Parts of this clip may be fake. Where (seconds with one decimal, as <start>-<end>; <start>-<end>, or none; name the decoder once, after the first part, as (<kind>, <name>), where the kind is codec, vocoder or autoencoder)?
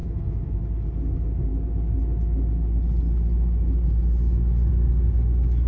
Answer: 0.0-0.6 (autoencoder, DAC-VAE)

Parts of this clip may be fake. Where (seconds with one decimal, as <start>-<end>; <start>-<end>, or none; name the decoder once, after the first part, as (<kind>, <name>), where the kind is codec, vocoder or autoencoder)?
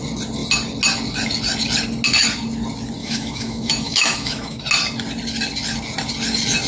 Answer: 3.0-4.6 (autoencoder, DAC-VAE)